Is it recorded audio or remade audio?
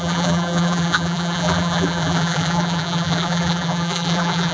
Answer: remade